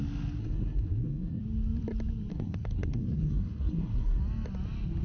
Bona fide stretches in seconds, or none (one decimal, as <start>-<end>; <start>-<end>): 0.0-0.4; 1.4-2.3; 4.2-5.0